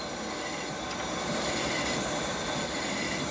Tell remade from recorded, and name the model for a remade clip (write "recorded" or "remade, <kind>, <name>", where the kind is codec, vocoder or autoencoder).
recorded